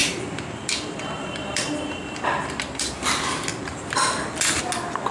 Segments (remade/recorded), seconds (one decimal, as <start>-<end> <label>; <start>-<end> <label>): 0.0-3.1 remade; 3.1-3.5 recorded; 3.5-4.6 remade; 4.6-5.1 recorded